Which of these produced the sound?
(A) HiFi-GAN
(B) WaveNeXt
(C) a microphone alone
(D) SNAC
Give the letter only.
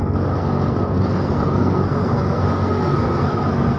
D